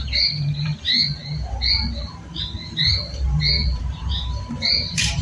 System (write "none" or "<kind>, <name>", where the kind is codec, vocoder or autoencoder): vocoder, BigVGAN v2